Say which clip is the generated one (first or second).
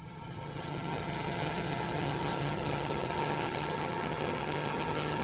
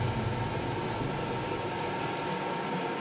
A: first